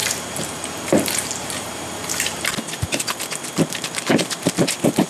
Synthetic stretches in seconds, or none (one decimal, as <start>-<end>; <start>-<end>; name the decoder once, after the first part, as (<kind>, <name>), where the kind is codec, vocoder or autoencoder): 0.0-2.4 (vocoder, BigVGAN v2); 3.4-5.1